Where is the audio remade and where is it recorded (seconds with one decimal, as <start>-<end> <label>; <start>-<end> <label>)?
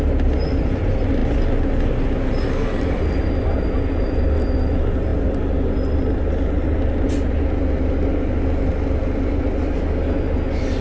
0.0-10.8 recorded